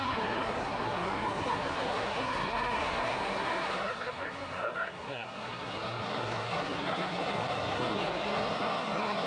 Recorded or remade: remade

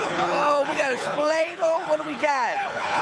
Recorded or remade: remade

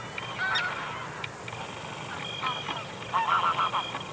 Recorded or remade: recorded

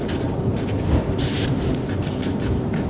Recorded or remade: remade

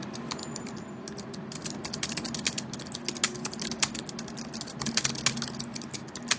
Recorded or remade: recorded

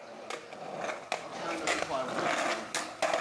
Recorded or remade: recorded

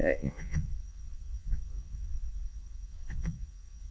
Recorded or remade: remade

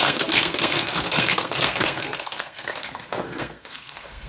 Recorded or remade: remade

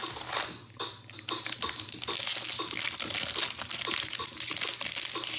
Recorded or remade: recorded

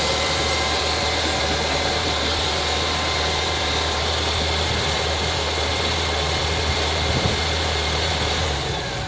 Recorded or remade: remade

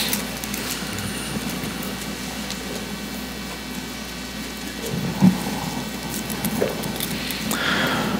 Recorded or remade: recorded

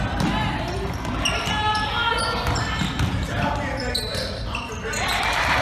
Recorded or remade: recorded